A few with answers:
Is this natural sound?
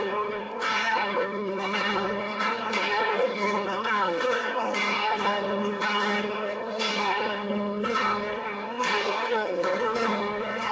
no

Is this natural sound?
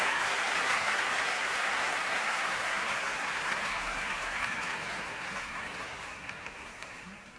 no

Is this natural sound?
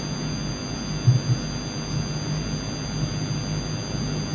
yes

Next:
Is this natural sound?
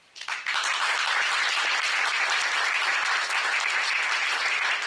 yes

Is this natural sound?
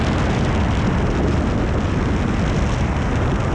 yes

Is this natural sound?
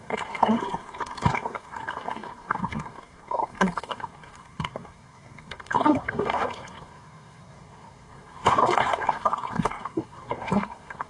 no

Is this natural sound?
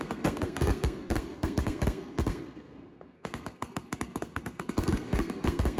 no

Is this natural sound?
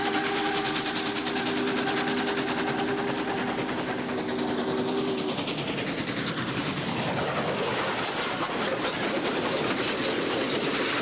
yes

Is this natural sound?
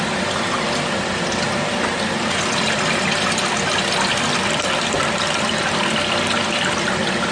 yes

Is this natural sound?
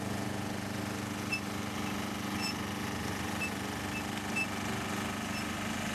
yes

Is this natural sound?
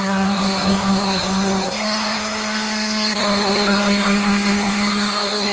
no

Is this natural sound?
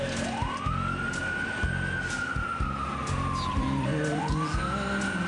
yes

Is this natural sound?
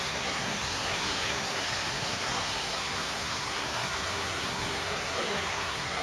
no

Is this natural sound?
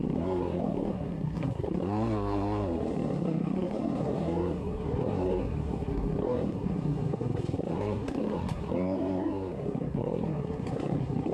no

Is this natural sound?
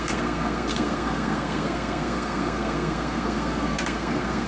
no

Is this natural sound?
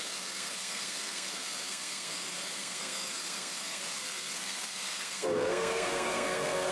no